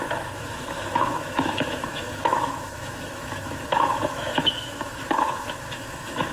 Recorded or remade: remade